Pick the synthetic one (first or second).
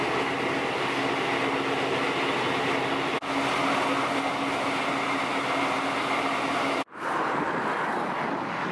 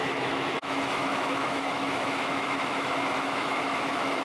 second